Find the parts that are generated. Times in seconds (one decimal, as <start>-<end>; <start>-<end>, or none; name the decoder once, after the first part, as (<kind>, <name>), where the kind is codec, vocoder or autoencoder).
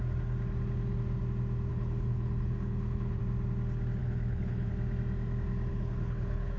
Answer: 1.7-3.2 (codec, HILCodec); 4.0-4.7; 5.7-6.6